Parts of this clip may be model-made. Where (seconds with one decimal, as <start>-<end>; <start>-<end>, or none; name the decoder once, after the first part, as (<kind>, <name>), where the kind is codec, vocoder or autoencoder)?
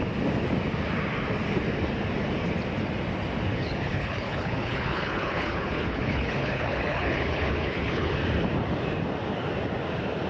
3.5-8.1 (codec, HILCodec)